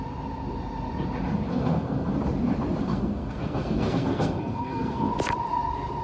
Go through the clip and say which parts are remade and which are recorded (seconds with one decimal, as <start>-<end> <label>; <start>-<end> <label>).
0.0-1.5 recorded; 1.5-2.2 remade; 2.2-2.8 recorded; 2.8-5.1 remade; 5.1-6.0 recorded